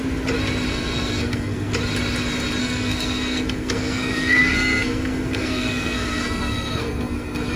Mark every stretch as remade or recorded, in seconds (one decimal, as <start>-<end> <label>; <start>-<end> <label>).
0.0-0.7 recorded; 0.7-1.7 remade; 1.7-2.6 recorded; 2.6-7.6 remade